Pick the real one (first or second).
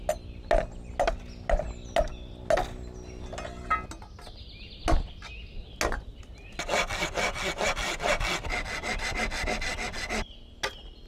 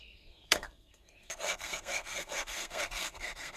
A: first